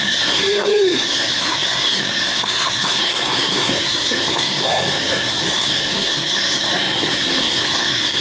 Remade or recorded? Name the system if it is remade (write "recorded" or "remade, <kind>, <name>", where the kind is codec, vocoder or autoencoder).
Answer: remade, codec, SNAC